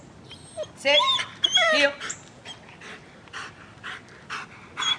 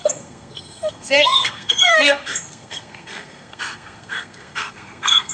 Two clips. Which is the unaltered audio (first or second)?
first